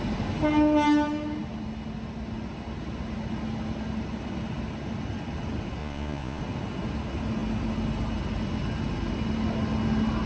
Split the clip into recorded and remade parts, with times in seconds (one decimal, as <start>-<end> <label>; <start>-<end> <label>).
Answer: 0.0-5.8 recorded; 5.8-6.4 remade; 6.4-10.3 recorded